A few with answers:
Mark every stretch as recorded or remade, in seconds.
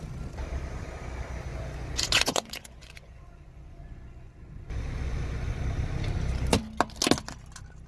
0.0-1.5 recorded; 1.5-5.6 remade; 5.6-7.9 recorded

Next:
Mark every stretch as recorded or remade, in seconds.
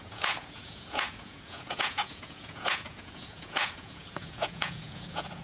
0.0-5.4 remade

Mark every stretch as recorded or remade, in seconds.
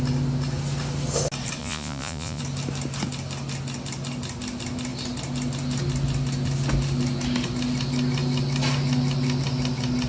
0.0-1.6 recorded; 1.6-2.4 remade; 2.4-10.1 recorded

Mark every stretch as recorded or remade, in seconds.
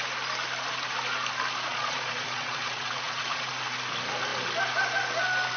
0.0-1.7 recorded; 1.7-3.5 remade; 3.5-5.6 recorded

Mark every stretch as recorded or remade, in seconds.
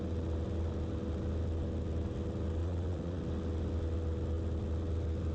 0.0-2.6 recorded; 2.6-3.2 remade; 3.2-5.3 recorded